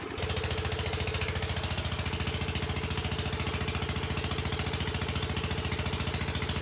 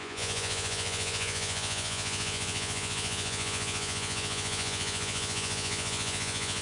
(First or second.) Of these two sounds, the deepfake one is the second